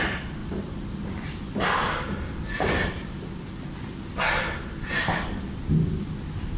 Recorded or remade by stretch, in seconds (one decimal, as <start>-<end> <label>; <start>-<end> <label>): 0.0-6.6 recorded